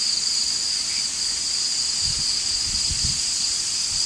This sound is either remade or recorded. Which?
recorded